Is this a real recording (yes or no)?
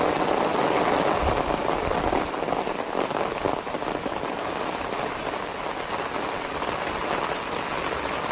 yes